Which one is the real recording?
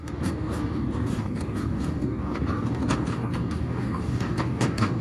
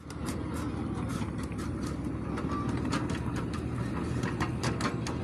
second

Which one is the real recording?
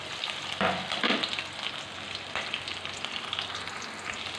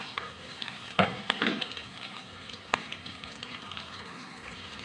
first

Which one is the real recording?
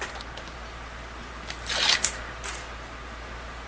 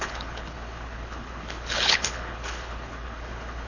first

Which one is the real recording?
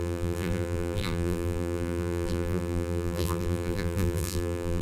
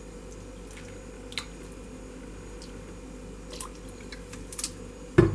second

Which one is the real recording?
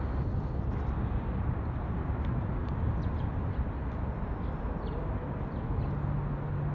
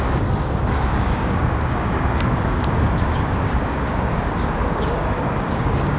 first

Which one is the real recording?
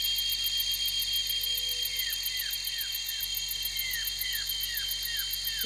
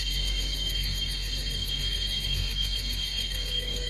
first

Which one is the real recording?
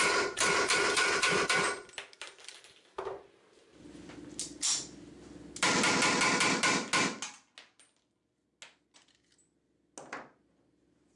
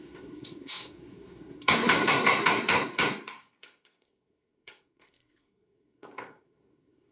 first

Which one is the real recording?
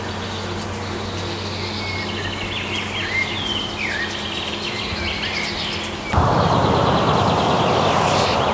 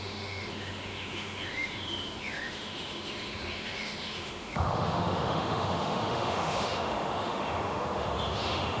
first